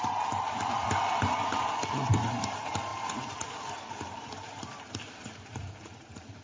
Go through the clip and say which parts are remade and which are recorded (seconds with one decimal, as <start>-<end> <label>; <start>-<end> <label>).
0.0-6.4 remade